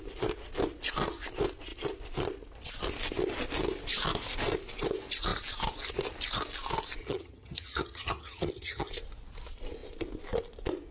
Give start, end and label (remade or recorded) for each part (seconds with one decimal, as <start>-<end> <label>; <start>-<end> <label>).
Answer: 0.0-7.0 recorded; 7.0-8.9 remade; 8.9-10.9 recorded